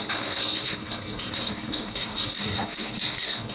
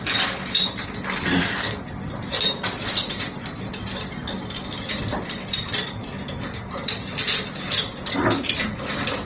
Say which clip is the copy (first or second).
first